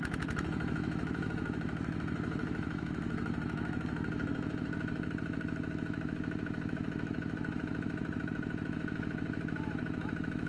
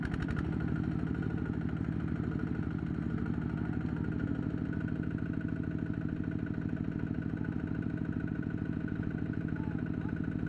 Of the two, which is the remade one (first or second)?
first